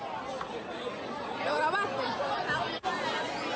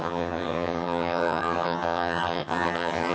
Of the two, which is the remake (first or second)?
second